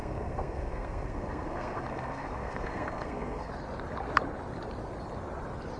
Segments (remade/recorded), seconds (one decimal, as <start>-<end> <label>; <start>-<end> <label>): 0.0-3.5 remade; 3.5-5.8 recorded